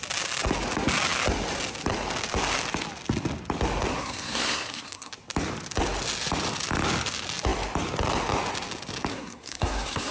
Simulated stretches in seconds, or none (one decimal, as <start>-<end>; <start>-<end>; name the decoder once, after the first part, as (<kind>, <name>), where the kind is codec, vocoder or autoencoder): 3.9-5.1 (codec, SNAC); 9.1-10.1